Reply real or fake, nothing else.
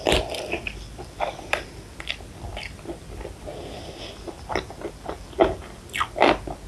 fake